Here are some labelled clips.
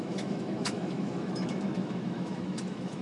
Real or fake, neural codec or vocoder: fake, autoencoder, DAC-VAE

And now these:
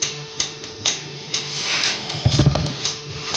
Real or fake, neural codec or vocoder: fake, autoencoder, DAC-VAE